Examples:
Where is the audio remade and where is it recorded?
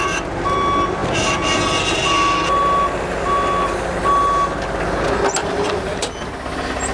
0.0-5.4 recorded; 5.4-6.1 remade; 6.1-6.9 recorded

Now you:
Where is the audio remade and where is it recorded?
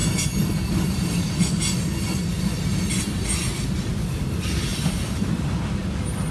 0.0-4.7 recorded; 4.7-5.3 remade; 5.3-6.3 recorded